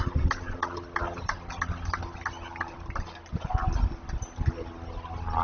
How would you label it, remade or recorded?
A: recorded